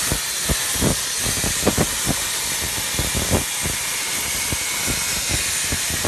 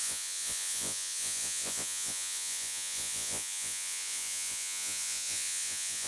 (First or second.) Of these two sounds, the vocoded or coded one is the second